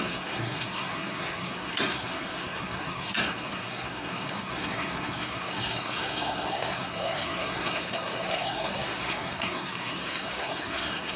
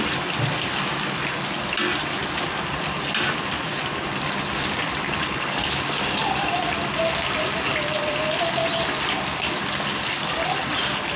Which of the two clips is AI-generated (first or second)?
first